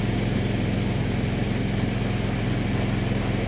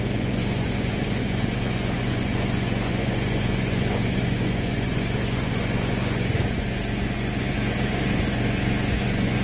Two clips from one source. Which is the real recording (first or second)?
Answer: first